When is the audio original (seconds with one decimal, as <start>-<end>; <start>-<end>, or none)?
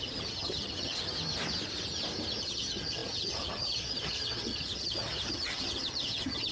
1.1-2.4